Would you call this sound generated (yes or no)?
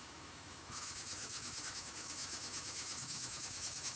yes